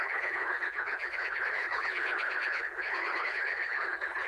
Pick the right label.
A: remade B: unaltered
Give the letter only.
A